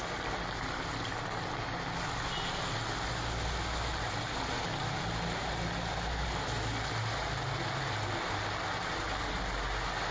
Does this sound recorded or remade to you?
recorded